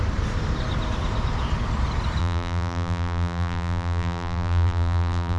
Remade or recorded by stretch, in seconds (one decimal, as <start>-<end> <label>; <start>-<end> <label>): 0.0-2.2 recorded; 2.2-5.4 remade